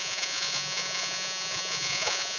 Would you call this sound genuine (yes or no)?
no